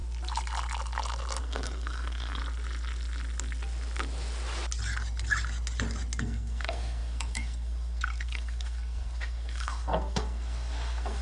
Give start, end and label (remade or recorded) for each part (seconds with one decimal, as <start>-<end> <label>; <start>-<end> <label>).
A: 0.0-1.4 recorded; 1.4-2.4 remade; 2.4-6.2 recorded; 6.2-11.2 remade